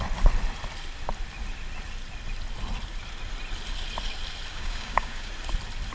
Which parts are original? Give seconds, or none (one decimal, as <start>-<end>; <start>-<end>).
0.0-4.5; 5.3-5.9